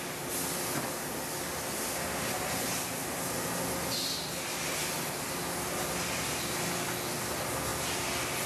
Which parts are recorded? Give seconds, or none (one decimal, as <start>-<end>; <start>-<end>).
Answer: 0.0-8.5